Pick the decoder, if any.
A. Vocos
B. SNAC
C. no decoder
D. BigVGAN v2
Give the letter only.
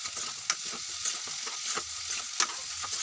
C